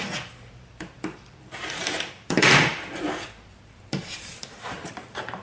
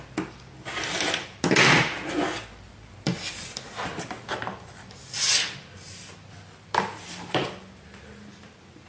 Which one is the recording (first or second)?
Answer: second